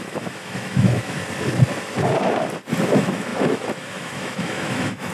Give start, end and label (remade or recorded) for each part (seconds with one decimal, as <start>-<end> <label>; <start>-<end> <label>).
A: 0.0-1.2 remade; 1.2-2.8 recorded; 2.8-5.1 remade